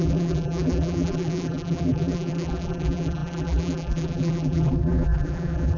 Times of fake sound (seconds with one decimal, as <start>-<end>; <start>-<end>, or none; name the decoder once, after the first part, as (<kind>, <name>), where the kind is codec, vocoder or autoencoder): 0.0-5.8 (vocoder, BigVGAN v2)